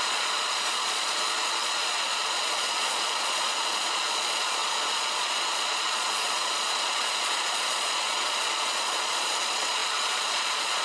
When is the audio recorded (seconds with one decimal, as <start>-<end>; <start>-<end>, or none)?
none

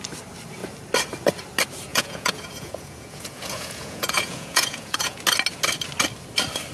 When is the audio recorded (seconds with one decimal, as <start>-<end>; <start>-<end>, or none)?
0.0-1.9; 5.2-6.7